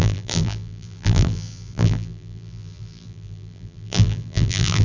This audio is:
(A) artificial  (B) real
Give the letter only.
A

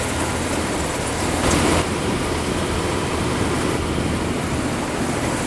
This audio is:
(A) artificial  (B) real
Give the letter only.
B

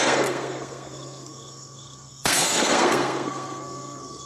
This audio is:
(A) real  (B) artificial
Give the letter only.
B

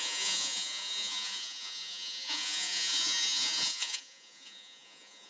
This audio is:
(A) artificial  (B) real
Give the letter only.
A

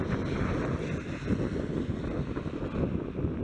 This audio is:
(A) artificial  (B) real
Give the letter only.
B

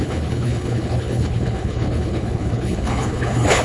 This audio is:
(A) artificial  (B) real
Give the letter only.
A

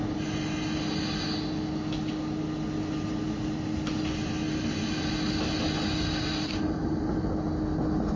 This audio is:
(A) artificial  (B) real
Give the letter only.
B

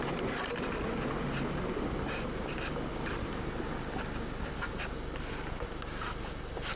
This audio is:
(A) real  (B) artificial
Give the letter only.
A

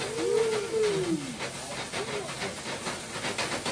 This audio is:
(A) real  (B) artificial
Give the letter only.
A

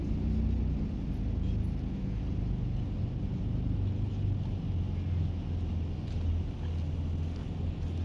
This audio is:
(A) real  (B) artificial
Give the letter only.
A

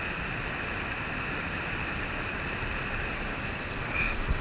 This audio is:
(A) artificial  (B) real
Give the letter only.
B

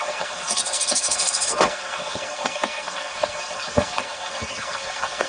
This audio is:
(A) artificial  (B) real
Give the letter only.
A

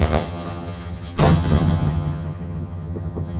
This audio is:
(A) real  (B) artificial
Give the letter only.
B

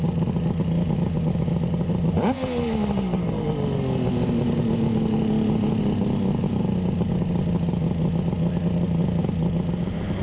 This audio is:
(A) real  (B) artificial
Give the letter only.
A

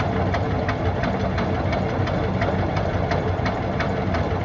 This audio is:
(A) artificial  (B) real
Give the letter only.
B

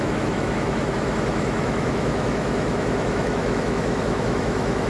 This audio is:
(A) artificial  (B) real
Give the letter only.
A